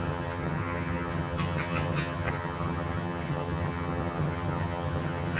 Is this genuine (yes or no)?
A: no